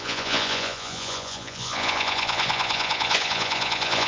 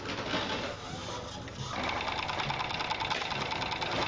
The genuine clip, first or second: second